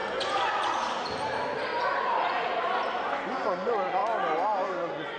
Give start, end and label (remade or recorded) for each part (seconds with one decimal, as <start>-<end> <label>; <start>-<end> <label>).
0.0-3.1 recorded; 3.1-4.0 remade; 4.0-4.7 recorded; 4.7-5.2 remade